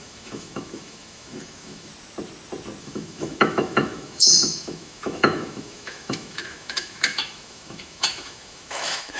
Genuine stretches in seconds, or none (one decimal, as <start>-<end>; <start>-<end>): 1.9-2.8